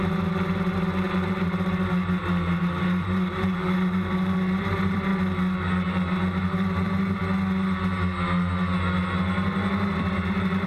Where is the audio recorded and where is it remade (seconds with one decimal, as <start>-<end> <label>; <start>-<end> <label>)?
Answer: 0.0-5.1 remade; 5.1-6.4 recorded; 6.4-7.2 remade; 7.2-9.7 recorded; 9.7-10.7 remade